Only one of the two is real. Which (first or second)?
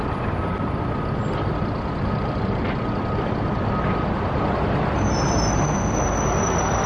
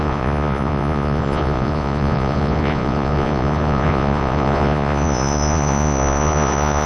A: first